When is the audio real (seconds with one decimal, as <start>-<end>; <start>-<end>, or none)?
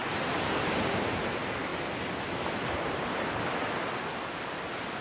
0.0-5.0